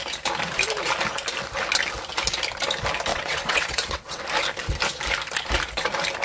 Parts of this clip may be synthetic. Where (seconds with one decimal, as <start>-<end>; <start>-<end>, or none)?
3.1-4.2